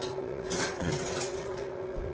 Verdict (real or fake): fake